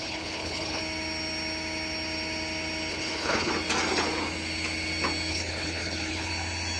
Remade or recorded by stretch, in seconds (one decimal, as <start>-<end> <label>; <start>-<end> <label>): 0.0-0.8 remade; 0.8-2.9 recorded; 2.9-3.5 remade; 3.5-5.3 recorded; 5.3-6.3 remade; 6.3-6.8 recorded